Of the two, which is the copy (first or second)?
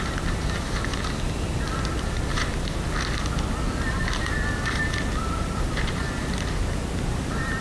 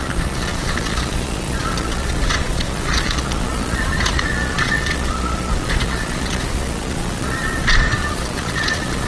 second